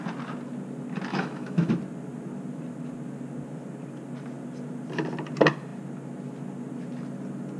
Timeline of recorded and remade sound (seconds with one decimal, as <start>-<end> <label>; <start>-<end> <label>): 0.0-1.1 recorded; 1.1-1.7 remade; 1.7-7.6 recorded